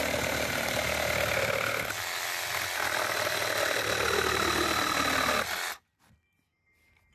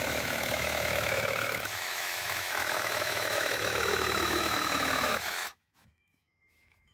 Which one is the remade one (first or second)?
second